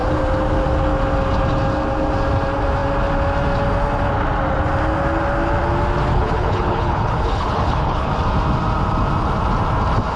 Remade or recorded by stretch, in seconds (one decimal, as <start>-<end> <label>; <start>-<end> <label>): 0.0-6.1 recorded; 6.1-8.1 remade; 8.1-10.2 recorded